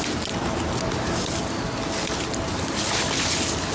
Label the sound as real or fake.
real